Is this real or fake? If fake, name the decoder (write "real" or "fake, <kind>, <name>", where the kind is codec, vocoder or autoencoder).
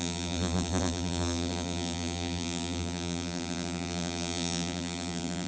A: fake, vocoder, BigVGAN v2